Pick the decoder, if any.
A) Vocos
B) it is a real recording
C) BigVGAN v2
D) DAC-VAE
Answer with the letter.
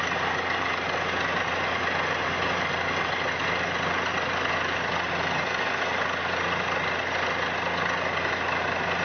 B